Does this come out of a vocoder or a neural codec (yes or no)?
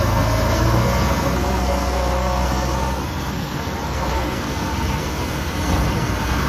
yes